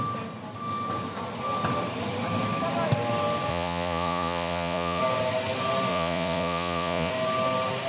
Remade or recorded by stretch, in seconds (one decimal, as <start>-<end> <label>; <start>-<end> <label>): 0.0-3.5 recorded; 3.5-5.0 remade; 5.0-5.9 recorded; 5.9-7.1 remade; 7.1-7.9 recorded